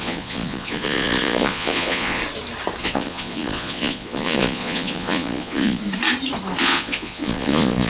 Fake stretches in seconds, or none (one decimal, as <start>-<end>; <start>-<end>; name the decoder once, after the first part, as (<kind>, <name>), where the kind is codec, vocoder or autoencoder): 0.0-2.2 (vocoder, Vocos); 2.8-5.8; 6.6-7.9